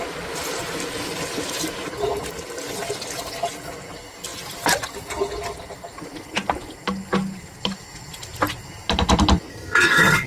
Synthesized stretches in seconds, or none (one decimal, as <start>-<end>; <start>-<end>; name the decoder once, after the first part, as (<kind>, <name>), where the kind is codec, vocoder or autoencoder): 9.5-10.3 (codec, SNAC)